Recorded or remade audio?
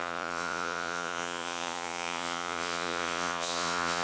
remade